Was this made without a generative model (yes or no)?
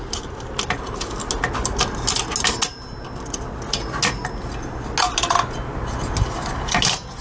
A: yes